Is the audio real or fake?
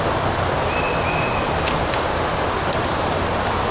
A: real